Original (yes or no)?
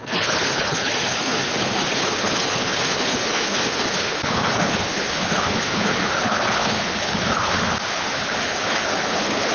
no